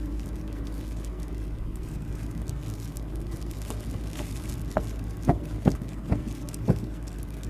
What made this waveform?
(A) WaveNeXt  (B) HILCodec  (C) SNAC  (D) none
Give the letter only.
C